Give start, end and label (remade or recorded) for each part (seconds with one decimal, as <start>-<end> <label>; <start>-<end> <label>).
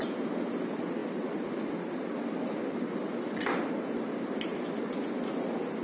0.0-5.8 recorded